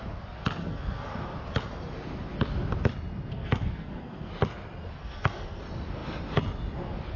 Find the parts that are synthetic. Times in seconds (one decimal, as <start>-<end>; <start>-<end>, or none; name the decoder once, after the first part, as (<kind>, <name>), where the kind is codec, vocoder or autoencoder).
0.6-1.1 (codec, SNAC); 3.3-4.3; 5.0-5.6